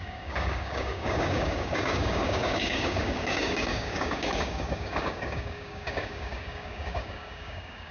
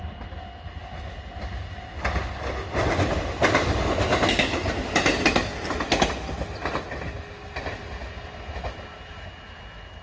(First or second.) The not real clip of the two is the first